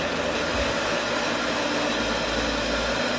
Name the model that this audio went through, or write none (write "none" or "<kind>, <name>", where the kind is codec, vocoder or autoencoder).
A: none